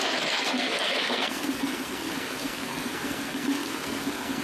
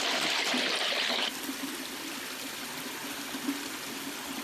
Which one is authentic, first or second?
second